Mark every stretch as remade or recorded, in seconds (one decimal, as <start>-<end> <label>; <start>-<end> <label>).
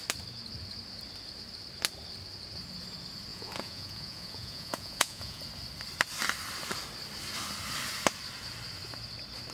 0.0-3.3 recorded; 3.3-5.4 remade; 5.4-9.5 recorded